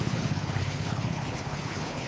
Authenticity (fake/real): fake